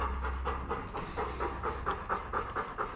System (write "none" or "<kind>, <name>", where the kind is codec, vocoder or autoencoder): none